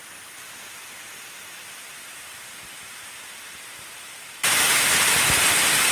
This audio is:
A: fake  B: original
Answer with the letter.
B